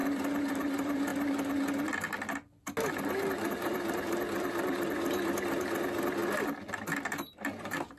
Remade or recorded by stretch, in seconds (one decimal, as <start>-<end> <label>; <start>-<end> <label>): 0.0-1.1 remade; 1.1-3.5 recorded; 3.5-6.2 remade; 6.2-7.0 recorded; 7.0-8.0 remade